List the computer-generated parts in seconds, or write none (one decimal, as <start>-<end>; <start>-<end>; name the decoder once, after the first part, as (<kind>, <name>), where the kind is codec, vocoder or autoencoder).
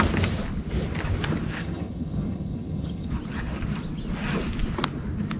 1.6-3.1 (vocoder, HiFi-GAN)